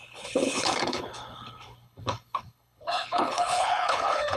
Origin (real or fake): fake